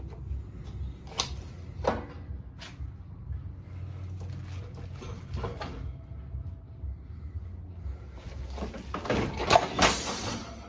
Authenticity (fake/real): real